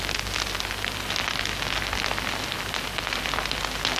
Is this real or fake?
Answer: real